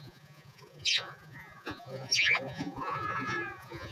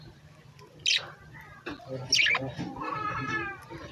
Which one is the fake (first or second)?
first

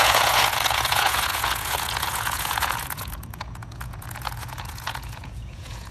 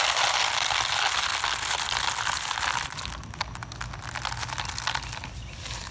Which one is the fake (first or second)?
first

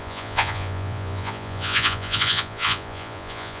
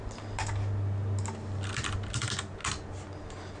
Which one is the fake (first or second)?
first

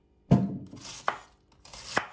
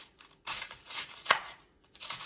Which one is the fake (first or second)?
second